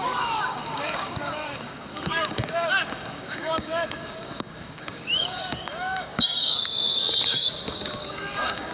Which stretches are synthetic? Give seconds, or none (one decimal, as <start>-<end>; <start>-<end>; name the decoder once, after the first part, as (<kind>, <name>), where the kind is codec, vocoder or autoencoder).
0.0-8.7 (codec, DAC)